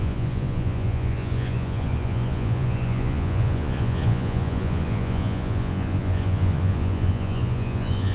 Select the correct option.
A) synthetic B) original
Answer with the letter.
A